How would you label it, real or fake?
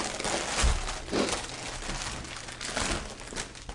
real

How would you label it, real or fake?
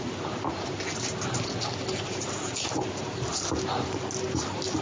real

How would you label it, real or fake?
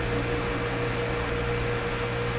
real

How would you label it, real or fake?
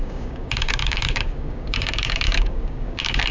fake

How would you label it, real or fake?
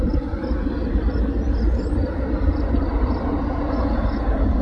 fake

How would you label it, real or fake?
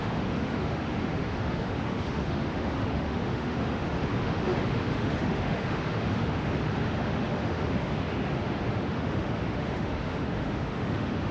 fake